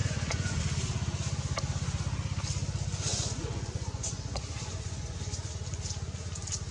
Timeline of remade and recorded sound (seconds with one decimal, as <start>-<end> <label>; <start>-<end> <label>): 0.0-0.6 remade; 0.6-3.1 recorded; 3.1-5.5 remade; 5.5-6.7 recorded

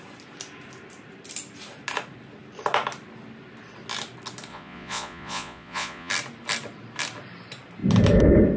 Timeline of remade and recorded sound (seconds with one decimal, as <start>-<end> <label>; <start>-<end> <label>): 0.0-4.5 recorded; 4.5-6.1 remade; 6.1-8.6 recorded

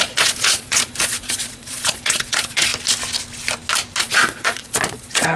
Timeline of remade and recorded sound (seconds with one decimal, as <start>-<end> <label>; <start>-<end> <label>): 0.0-2.7 remade; 2.7-4.0 recorded; 4.0-5.4 remade